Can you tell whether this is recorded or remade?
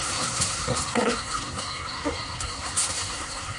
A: remade